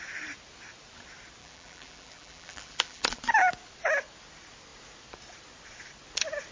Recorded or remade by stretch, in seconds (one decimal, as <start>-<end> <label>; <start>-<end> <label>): 0.0-1.4 recorded; 1.4-3.2 remade; 3.2-6.5 recorded